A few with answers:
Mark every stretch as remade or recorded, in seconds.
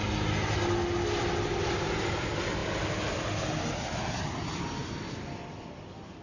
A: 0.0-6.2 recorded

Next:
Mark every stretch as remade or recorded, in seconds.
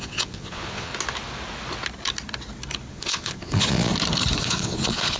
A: 0.0-0.9 remade; 0.9-2.9 recorded; 2.9-3.9 remade; 3.9-4.4 recorded; 4.4-5.2 remade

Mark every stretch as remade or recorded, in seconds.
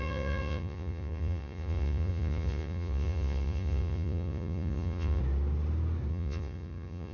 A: 0.0-5.2 remade; 5.2-6.1 recorded; 6.1-7.1 remade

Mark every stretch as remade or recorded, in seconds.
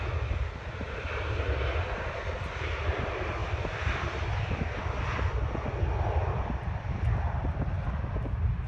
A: 0.0-8.7 recorded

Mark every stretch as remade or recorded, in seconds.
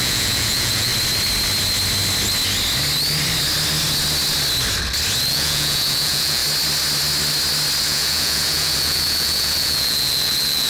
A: 0.0-0.9 remade; 0.9-5.3 recorded; 5.3-6.4 remade; 6.4-7.8 recorded; 7.8-10.7 remade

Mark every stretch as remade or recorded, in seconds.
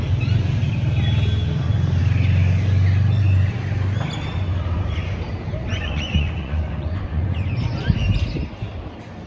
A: 0.0-5.7 recorded; 5.7-7.8 remade; 7.8-9.3 recorded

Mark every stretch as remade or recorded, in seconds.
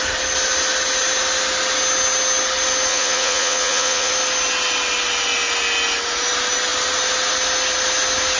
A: 0.0-2.9 recorded; 2.9-4.1 remade; 4.1-8.4 recorded